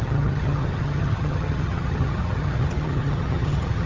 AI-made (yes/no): yes